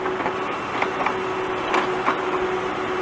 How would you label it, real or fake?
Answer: real